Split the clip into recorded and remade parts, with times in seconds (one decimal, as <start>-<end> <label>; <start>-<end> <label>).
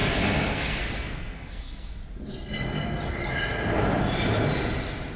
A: 0.0-0.5 recorded; 0.5-2.0 remade; 2.0-5.2 recorded